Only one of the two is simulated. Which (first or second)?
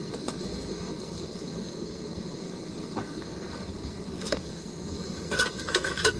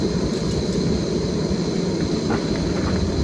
first